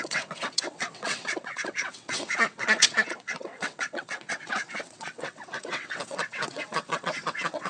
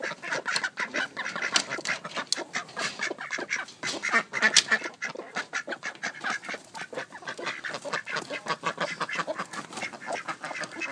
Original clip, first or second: second